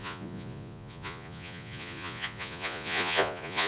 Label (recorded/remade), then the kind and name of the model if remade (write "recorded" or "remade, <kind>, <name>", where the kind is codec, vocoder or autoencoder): remade, vocoder, Vocos